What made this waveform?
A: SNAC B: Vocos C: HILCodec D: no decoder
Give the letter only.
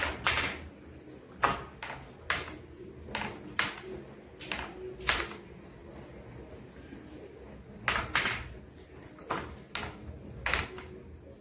D